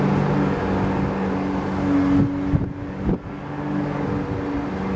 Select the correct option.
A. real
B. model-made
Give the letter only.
A